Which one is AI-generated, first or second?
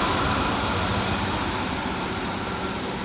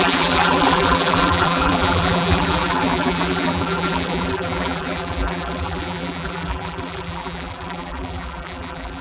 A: second